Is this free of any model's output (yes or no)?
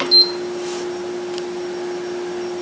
yes